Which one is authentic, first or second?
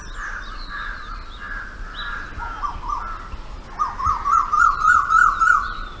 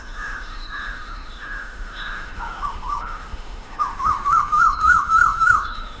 first